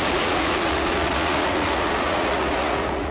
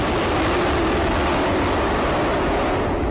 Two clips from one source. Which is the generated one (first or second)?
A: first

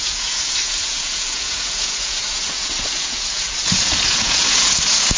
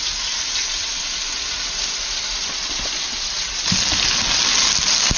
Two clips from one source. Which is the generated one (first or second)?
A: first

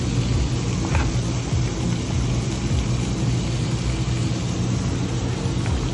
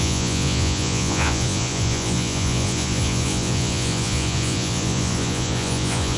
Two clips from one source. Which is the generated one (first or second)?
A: second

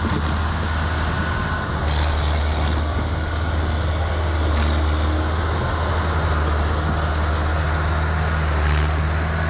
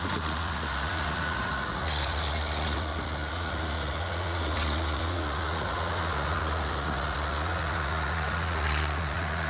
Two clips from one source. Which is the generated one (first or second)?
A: second